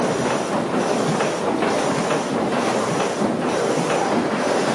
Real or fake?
real